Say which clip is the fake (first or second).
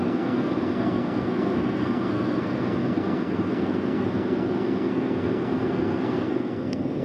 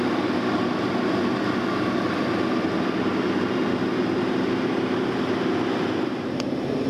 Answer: first